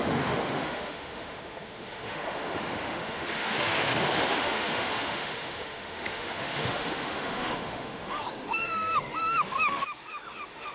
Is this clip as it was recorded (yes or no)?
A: no